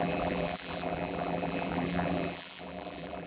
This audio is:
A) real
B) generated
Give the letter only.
B